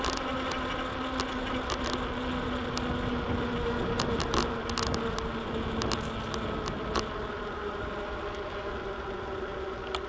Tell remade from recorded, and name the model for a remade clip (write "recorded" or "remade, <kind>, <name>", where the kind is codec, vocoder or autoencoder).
recorded